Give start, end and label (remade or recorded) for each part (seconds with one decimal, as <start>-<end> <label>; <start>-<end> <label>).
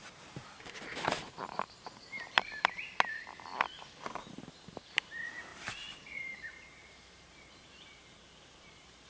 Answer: 0.0-3.5 remade; 3.5-4.3 recorded; 4.3-9.1 remade